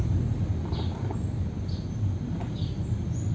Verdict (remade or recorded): recorded